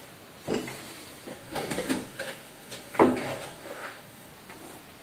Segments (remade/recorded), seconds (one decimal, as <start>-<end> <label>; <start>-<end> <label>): 0.0-1.3 recorded; 1.3-4.3 remade; 4.3-5.0 recorded